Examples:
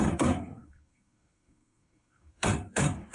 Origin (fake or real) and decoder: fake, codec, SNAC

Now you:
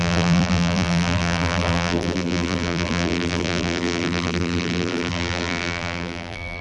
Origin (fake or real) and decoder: fake, vocoder, BigVGAN v2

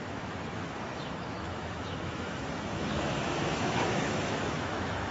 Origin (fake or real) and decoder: fake, autoencoder, DAC-VAE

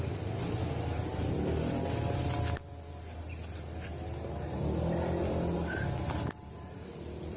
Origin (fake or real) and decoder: real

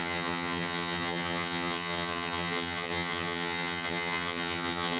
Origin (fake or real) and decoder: fake, vocoder, HiFi-GAN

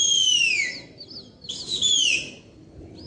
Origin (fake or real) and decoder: real